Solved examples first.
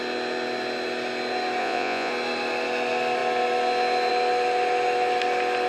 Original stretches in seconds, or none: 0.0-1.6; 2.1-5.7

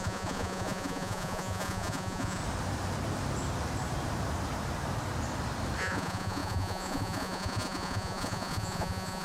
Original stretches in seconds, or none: 2.4-5.8

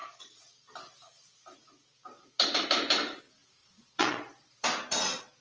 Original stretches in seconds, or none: 0.0-3.6; 4.5-5.4

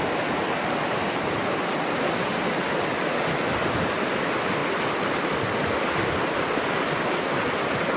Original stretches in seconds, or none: 0.0-8.0

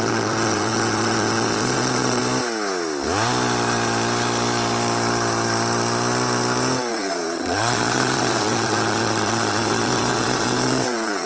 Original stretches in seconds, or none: 2.2-6.9

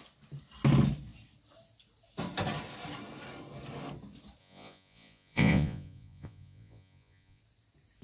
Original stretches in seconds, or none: 0.0-4.4; 7.4-8.0